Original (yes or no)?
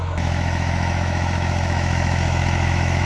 no